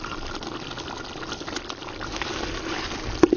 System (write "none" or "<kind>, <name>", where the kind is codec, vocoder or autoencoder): none